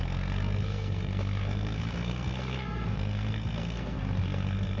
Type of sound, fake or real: fake